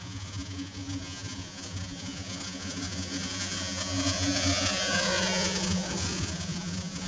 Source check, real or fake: fake